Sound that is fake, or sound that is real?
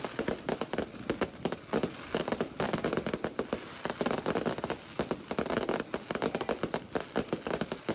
real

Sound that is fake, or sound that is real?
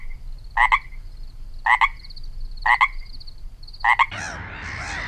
real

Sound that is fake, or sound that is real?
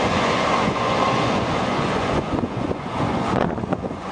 fake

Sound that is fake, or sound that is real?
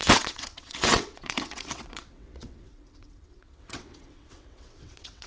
fake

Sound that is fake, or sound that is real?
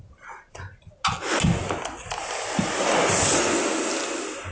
real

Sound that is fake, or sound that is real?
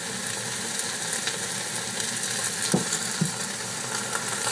real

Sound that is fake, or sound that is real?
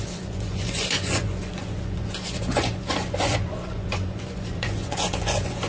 fake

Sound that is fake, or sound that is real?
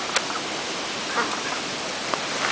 real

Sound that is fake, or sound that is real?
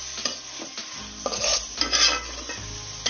real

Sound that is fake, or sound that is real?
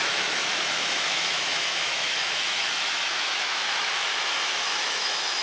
fake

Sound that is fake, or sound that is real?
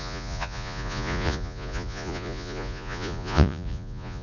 fake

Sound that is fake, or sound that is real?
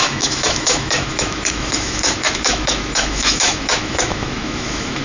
fake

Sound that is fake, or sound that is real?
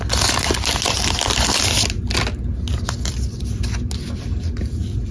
real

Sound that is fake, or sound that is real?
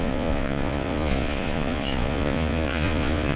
fake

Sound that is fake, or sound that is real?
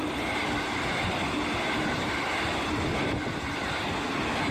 fake